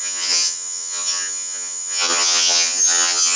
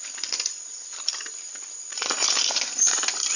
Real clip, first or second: second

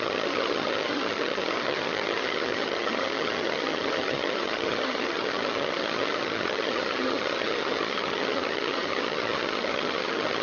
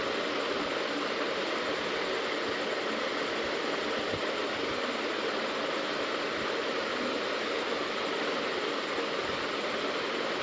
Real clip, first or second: second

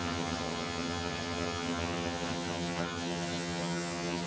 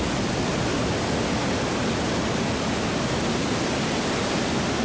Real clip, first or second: second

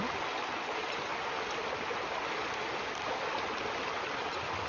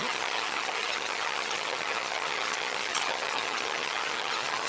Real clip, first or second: first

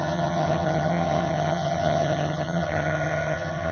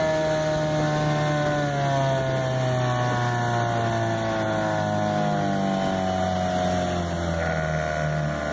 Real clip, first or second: second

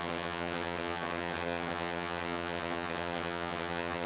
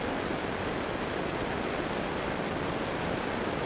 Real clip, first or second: second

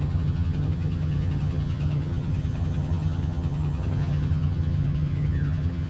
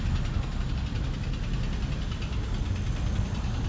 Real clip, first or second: second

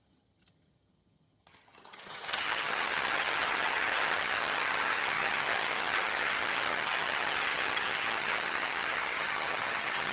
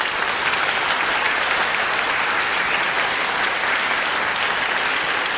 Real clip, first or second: second